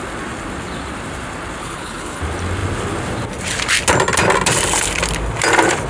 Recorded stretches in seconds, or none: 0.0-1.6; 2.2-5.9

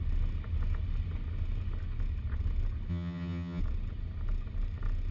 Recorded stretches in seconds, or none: 0.0-2.9; 3.6-5.1

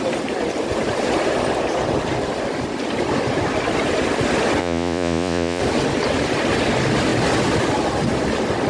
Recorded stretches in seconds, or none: 0.0-4.6; 5.6-8.7

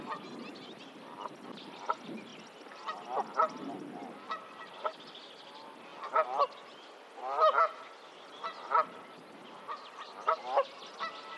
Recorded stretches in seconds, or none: 0.0-11.4

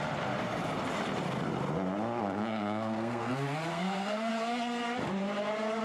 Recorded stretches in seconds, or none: 0.0-2.2; 3.3-3.7; 4.3-5.8

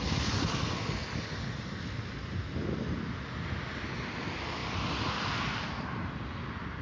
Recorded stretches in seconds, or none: 0.0-6.8